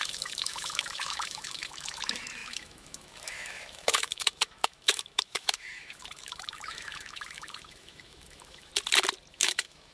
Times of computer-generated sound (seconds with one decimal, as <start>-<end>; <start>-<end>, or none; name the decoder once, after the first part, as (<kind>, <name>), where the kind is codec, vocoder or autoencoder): 0.0-8.7 (autoencoder, DAC-VAE); 9.3-9.9